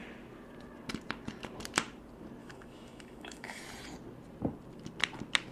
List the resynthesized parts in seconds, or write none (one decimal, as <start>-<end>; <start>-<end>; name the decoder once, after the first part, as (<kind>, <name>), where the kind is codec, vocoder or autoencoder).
2.4-3.6 (autoencoder, DAC-VAE)